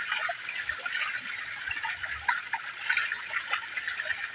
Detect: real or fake real